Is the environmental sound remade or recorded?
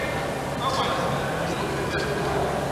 recorded